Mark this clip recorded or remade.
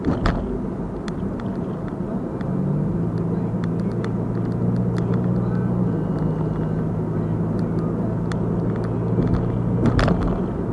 recorded